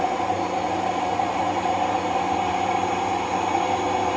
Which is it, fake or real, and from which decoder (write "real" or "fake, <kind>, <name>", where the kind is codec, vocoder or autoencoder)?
real